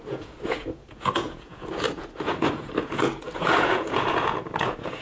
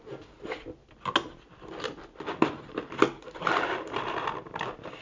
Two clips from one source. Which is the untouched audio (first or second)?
second